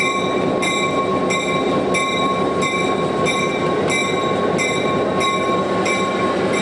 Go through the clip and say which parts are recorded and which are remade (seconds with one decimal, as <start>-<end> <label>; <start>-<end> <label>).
0.0-6.6 recorded

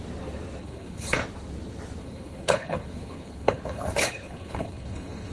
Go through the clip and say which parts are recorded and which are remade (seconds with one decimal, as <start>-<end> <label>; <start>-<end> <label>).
0.0-0.6 recorded; 0.6-1.2 remade; 1.2-2.0 recorded; 2.0-5.3 remade

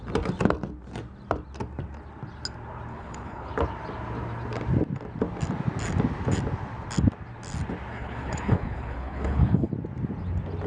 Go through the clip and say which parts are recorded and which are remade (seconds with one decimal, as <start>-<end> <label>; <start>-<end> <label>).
0.0-2.9 recorded; 2.9-3.5 remade; 3.5-7.9 recorded; 7.9-9.7 remade; 9.7-10.7 recorded

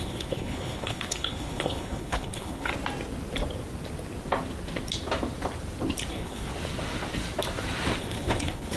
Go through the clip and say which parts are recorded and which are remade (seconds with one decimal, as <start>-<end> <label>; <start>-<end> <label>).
0.0-2.7 remade; 2.7-6.1 recorded; 6.1-6.5 remade; 6.5-8.0 recorded; 8.0-8.8 remade

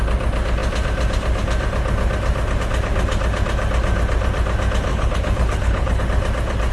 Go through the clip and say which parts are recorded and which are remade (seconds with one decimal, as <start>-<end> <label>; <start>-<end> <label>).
0.0-4.9 recorded; 4.9-6.0 remade; 6.0-6.7 recorded